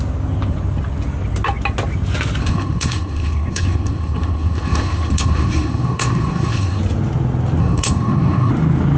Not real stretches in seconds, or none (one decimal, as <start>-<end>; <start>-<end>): 2.4-6.8; 7.6-8.5